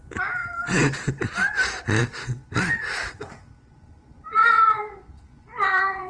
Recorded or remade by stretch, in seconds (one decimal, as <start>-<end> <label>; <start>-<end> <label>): 0.0-3.7 recorded; 3.7-6.1 remade